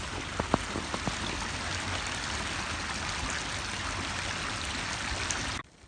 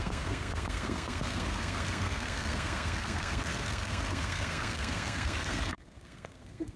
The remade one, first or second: second